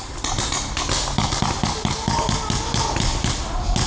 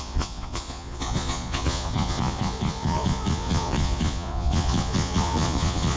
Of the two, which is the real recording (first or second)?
first